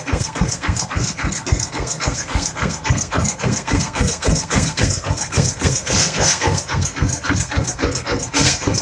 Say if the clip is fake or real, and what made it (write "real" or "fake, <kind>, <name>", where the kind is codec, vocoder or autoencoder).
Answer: fake, codec, SNAC